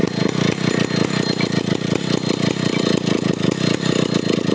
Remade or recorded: recorded